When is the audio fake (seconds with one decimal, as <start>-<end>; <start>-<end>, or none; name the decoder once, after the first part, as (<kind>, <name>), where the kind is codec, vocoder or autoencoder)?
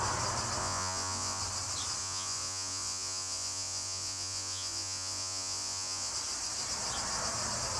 0.6-1.4 (vocoder, Vocos); 2.0-6.1